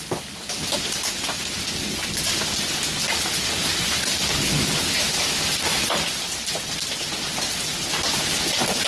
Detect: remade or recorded recorded